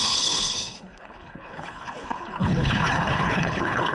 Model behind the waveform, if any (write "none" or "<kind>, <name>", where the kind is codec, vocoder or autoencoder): codec, HILCodec